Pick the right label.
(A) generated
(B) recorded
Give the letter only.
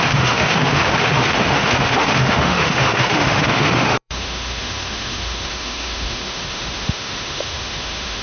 A